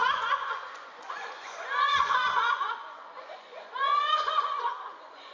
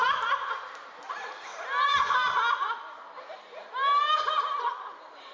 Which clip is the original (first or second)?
second